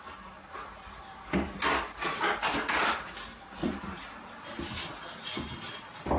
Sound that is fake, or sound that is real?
real